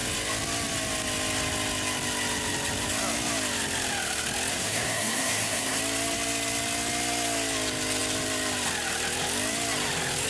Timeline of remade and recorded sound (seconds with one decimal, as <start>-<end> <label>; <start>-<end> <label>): 0.0-4.5 recorded; 4.5-5.8 remade; 5.8-10.3 recorded